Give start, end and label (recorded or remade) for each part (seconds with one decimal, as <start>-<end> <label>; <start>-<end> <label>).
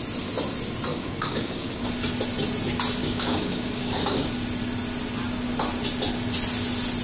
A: 0.0-0.9 recorded; 0.9-1.9 remade; 1.9-3.0 recorded; 3.0-4.3 remade; 4.3-7.0 recorded